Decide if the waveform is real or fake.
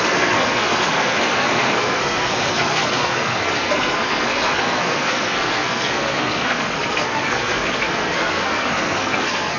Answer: fake